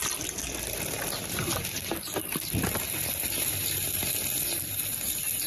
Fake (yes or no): yes